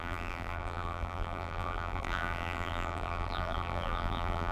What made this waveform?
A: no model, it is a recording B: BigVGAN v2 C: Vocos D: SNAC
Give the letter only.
B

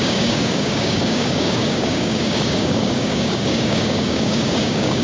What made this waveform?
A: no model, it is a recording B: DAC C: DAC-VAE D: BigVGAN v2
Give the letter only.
B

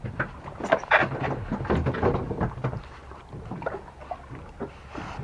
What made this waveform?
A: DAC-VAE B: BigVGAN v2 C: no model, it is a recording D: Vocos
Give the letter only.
C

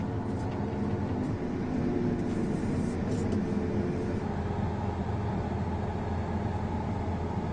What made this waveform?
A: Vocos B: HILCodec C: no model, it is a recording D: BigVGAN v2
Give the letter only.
C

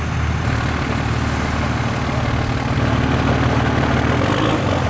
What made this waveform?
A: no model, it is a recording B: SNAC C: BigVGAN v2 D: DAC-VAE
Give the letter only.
A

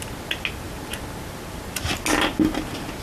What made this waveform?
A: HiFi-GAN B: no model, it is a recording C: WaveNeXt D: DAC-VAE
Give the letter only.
B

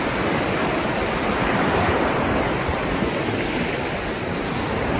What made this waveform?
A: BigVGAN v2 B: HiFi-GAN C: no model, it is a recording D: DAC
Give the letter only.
C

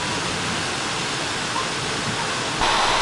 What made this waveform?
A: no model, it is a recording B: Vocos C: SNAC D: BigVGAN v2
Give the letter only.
A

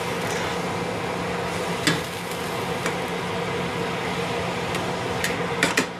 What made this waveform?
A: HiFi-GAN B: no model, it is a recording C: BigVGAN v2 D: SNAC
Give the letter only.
B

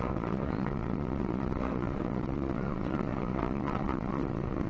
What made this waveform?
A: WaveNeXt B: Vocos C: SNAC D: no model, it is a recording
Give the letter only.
A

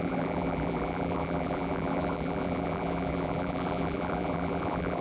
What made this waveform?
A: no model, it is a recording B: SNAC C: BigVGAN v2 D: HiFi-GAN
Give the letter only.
C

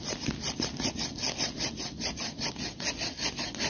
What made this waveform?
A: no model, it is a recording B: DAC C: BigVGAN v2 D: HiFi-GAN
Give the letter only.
A